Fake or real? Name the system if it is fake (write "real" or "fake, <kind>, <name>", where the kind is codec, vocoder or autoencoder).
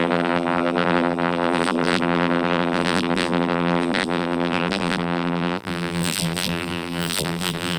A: fake, vocoder, BigVGAN v2